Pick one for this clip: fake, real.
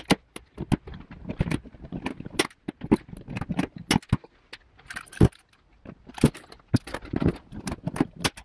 real